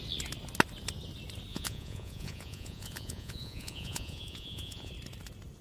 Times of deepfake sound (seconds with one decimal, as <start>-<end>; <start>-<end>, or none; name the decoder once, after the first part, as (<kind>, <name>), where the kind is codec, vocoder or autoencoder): 1.5-4.9 (vocoder, Vocos)